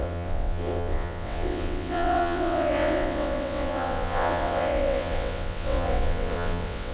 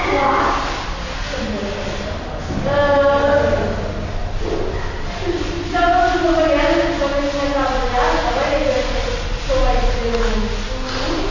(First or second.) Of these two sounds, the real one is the second